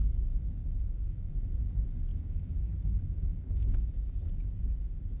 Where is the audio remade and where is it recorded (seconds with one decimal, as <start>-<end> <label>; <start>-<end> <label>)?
0.0-0.6 recorded; 0.6-1.3 remade; 1.3-2.1 recorded; 2.1-4.6 remade; 4.6-5.2 recorded